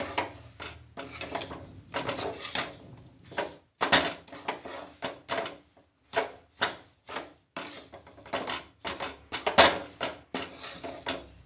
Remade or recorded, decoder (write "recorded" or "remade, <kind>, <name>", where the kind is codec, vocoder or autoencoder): recorded